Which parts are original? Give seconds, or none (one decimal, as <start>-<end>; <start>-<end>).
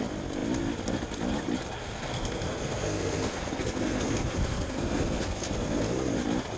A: 0.0-1.8; 5.8-6.6